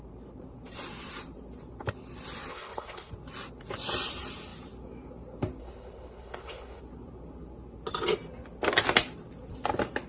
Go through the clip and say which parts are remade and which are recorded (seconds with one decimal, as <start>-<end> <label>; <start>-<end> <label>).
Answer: 0.0-2.5 recorded; 2.5-3.1 remade; 3.1-5.6 recorded; 5.6-6.8 remade; 6.8-10.1 recorded